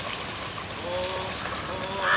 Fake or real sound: real